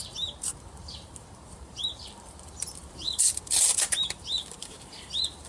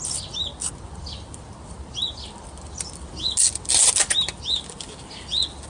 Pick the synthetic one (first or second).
first